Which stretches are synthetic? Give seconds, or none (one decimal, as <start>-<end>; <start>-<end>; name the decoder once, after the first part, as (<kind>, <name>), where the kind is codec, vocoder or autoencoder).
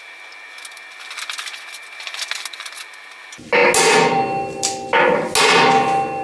none